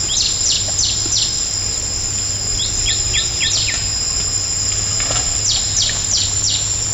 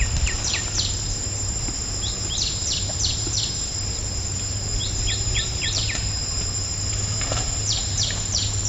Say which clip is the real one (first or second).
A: first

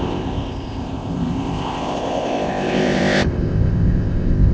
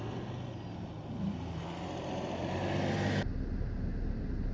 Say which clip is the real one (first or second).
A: second